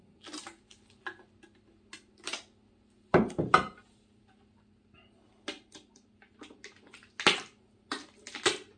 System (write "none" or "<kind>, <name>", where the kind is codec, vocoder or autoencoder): none